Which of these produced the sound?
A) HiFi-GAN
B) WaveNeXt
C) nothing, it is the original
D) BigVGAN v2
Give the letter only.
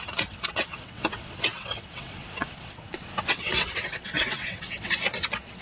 B